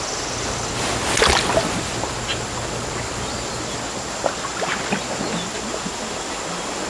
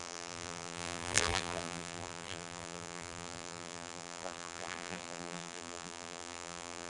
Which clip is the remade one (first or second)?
second